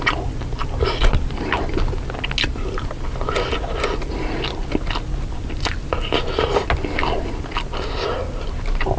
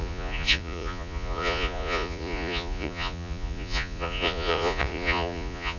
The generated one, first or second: second